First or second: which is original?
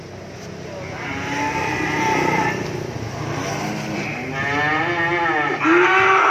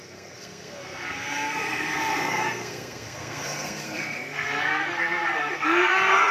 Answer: first